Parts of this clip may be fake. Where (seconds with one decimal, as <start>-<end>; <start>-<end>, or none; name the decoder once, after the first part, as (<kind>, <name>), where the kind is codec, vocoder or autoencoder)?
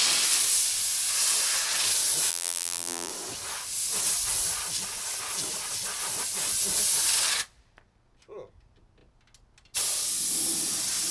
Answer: 2.3-3.1 (vocoder, BigVGAN v2)